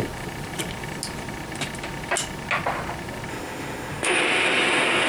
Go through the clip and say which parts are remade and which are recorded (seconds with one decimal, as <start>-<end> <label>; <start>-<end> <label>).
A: 0.0-3.3 recorded; 3.3-4.2 remade; 4.2-5.1 recorded